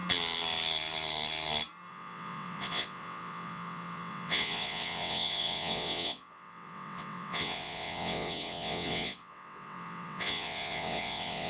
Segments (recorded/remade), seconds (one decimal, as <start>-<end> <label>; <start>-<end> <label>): 0.0-1.9 recorded; 1.9-11.5 remade